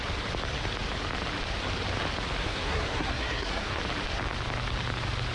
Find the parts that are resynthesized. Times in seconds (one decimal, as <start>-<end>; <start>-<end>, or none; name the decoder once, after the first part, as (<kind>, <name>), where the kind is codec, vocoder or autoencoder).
2.4-3.8 (codec, SNAC)